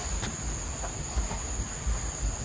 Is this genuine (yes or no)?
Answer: yes